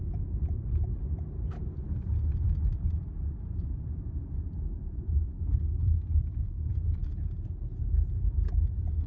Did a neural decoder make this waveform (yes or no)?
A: yes